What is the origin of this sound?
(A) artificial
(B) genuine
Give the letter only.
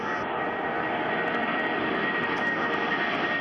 A